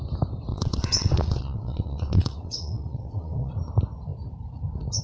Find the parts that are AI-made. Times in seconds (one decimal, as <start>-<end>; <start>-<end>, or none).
0.5-3.5